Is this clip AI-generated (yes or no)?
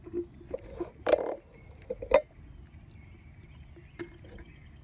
no